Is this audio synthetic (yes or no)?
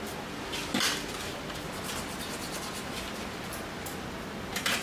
no